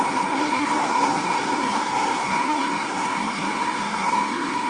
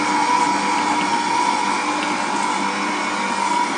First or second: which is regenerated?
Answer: first